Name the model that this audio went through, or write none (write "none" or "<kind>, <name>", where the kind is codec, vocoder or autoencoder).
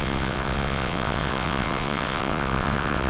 vocoder, WaveNeXt